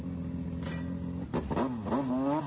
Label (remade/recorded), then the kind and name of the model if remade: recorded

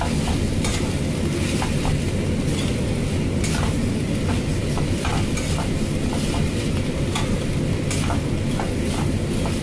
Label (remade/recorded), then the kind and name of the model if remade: recorded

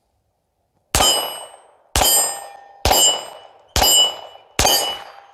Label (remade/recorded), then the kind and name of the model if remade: recorded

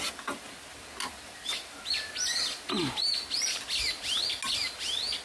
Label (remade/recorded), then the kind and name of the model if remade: recorded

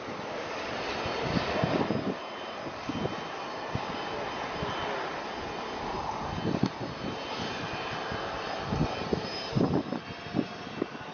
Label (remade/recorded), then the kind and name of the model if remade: recorded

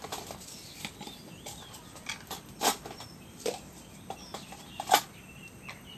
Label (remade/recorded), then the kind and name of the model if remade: recorded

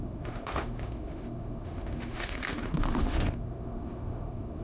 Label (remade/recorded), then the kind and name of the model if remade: remade, autoencoder, DAC-VAE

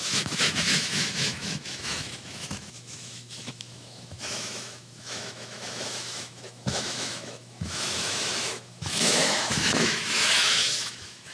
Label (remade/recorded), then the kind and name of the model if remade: remade, autoencoder, DAC-VAE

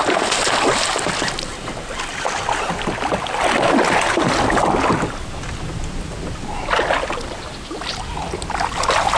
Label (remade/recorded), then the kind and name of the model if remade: recorded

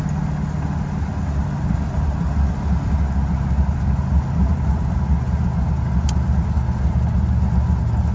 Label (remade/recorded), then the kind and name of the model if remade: recorded